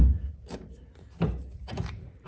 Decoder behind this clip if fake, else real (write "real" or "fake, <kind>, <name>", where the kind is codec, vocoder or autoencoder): fake, vocoder, BigVGAN v2